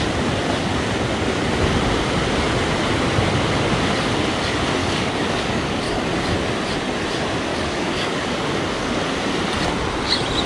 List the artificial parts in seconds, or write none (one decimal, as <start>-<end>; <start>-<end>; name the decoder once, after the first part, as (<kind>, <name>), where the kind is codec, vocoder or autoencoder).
4.8-6.1 (codec, DAC); 7.5-9.0